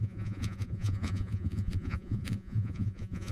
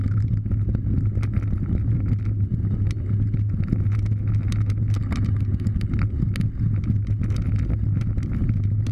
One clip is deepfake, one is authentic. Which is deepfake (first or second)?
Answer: first